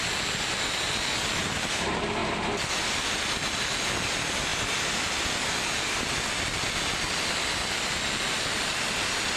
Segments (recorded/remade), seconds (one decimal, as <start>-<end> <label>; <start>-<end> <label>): 0.0-9.4 recorded